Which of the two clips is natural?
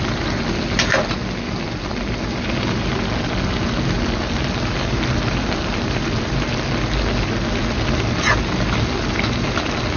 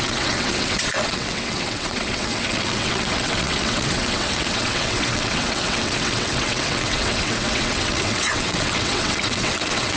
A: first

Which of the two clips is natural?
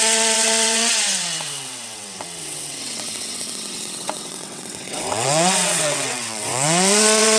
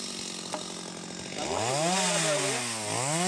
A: second